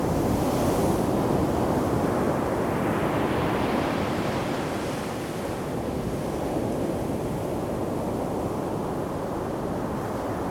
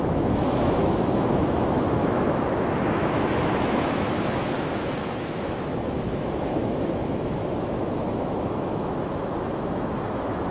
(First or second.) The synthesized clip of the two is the second